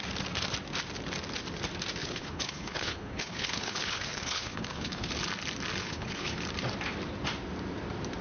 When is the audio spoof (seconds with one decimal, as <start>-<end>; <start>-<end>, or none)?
2.0-5.1; 5.8-6.4